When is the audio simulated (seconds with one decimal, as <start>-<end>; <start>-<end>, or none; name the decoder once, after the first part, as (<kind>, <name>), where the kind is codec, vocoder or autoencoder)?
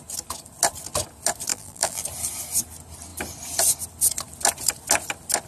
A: 1.5-2.0 (vocoder, BigVGAN v2)